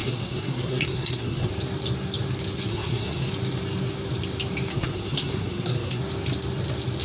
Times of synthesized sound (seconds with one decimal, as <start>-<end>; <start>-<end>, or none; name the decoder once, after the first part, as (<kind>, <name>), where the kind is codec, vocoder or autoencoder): 0.0-1.5 (codec, SNAC); 2.7-3.3; 4.7-6.0